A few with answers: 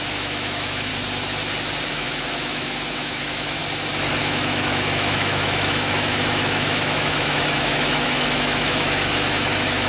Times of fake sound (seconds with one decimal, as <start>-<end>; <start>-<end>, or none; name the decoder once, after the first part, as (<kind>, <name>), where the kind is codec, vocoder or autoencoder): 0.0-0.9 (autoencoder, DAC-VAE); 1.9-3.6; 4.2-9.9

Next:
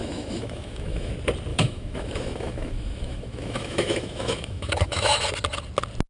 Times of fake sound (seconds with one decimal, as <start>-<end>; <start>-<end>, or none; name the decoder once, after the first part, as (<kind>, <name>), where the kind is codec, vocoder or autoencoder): 0.0-1.1 (autoencoder, DAC-VAE); 1.5-5.2

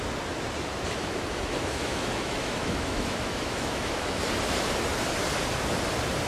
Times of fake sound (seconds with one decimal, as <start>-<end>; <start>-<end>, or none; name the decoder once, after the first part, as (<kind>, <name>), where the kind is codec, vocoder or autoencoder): 1.0-4.2 (autoencoder, DAC-VAE)

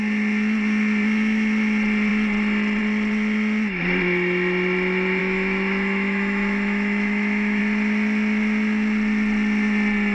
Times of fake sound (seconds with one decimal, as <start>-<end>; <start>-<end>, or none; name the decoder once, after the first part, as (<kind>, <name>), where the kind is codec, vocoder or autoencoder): 5.2-7.6 (autoencoder, DAC-VAE)

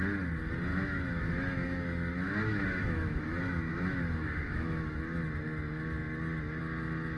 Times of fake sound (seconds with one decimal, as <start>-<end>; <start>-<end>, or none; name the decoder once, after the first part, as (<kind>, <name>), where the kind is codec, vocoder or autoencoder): 0.7-5.0 (autoencoder, DAC-VAE)

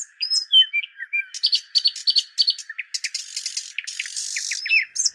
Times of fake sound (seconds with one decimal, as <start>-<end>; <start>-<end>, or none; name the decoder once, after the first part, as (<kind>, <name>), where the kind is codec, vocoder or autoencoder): none

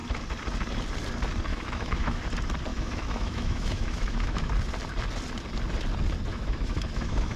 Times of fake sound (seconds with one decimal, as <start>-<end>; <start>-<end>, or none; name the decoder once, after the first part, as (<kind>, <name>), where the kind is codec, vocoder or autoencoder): 1.5-2.2 (autoencoder, DAC-VAE); 2.7-4.5; 6.3-7.4

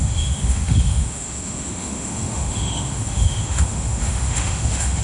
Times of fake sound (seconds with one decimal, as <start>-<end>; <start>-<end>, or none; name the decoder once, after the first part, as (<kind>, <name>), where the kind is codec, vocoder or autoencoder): 0.0-5.0 (autoencoder, DAC-VAE)